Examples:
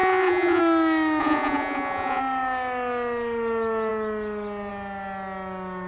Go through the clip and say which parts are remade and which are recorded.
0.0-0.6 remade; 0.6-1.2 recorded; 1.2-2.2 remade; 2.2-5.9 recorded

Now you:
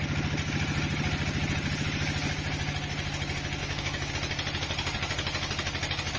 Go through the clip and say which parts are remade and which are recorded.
0.0-3.6 recorded; 3.6-4.1 remade; 4.1-6.2 recorded

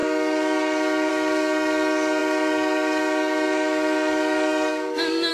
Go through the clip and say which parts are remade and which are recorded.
0.0-5.3 remade

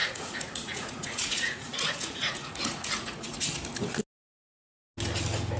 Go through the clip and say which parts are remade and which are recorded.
0.0-3.4 remade; 3.4-5.6 recorded

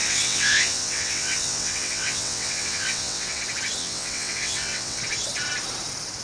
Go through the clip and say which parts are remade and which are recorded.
0.0-3.4 remade; 3.4-3.8 recorded; 3.8-5.0 remade; 5.0-6.2 recorded

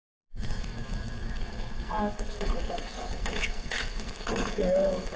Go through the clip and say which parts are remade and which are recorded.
0.0-5.2 remade

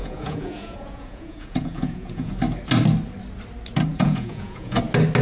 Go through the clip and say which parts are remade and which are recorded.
0.0-2.3 remade; 2.3-3.9 recorded; 3.9-4.8 remade; 4.8-5.2 recorded

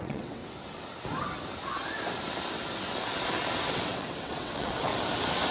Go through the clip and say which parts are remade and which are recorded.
0.0-0.4 remade; 0.4-3.7 recorded; 3.7-4.9 remade; 4.9-5.5 recorded